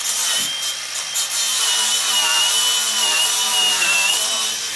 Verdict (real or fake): fake